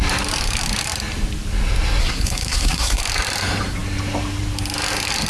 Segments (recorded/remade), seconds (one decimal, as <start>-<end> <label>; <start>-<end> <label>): 0.0-2.0 recorded; 2.0-3.0 remade; 3.0-5.3 recorded